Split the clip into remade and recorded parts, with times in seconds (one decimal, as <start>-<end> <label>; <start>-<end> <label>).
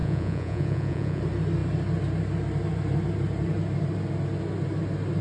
0.0-1.2 remade; 1.2-5.2 recorded